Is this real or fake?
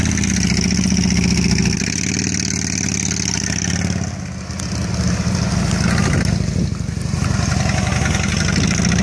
real